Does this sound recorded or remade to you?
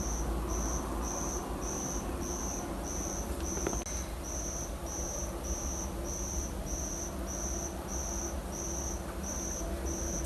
recorded